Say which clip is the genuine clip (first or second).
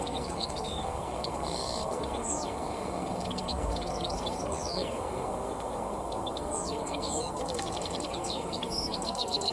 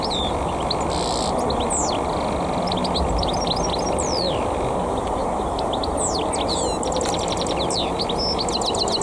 second